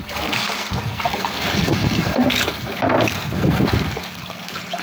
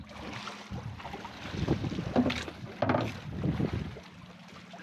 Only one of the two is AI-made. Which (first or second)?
first